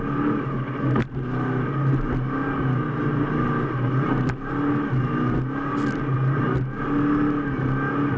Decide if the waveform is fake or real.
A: real